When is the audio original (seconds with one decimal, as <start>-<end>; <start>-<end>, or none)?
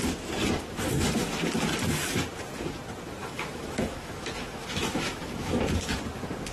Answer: 0.0-3.2; 6.0-6.5